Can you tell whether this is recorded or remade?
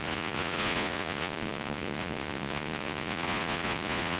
remade